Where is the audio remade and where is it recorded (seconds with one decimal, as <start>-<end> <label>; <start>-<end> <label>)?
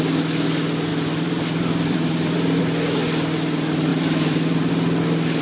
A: 0.0-0.9 recorded; 0.9-2.6 remade; 2.6-3.9 recorded; 3.9-4.7 remade; 4.7-5.4 recorded